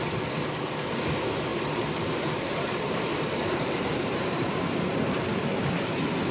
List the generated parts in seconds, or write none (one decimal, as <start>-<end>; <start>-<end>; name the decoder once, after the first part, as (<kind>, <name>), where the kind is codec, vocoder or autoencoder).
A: 1.5-5.3 (vocoder, BigVGAN v2)